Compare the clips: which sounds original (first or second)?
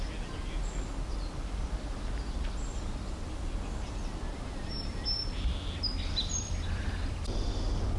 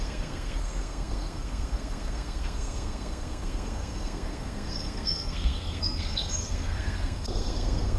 first